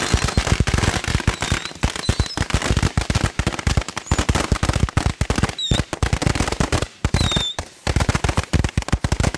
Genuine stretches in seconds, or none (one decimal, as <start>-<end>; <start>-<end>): 0.0-1.7; 4.8-6.7; 8.5-9.4